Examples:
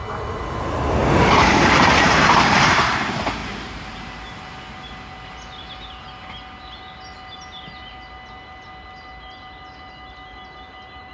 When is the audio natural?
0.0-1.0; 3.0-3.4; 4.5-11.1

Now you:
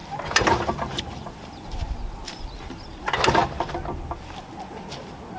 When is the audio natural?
2.4-5.4